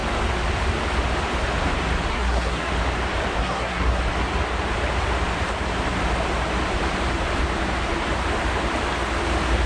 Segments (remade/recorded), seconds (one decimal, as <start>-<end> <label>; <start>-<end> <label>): 0.0-2.1 recorded; 2.1-2.7 remade; 2.7-3.4 recorded; 3.4-4.0 remade; 4.0-9.7 recorded